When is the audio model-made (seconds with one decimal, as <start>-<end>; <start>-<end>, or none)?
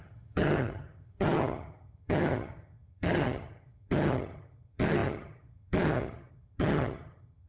0.0-7.5